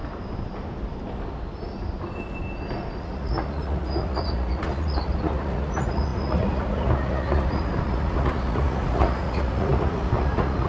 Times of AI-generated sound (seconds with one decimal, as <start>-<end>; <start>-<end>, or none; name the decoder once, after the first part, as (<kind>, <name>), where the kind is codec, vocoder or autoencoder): 3.0-10.7 (vocoder, Vocos)